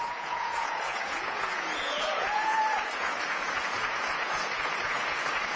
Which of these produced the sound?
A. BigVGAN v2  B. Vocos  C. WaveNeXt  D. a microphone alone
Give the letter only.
B